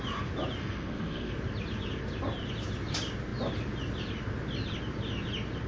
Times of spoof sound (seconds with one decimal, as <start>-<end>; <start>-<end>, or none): 0.6-1.3